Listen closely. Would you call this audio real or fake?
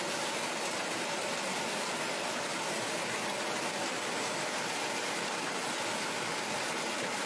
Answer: real